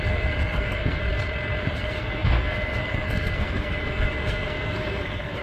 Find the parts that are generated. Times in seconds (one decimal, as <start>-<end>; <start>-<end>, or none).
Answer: 0.0-1.0; 1.6-5.4